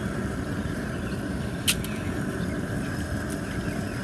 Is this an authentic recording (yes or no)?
yes